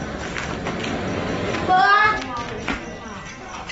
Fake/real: real